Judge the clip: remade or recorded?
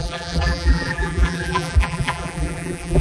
remade